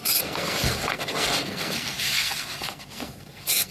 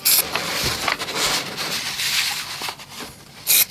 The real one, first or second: second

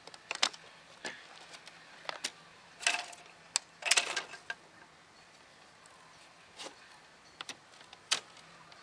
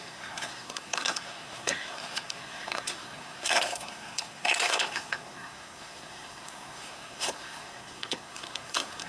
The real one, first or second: first